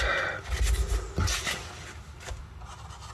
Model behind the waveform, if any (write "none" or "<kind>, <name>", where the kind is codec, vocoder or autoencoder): none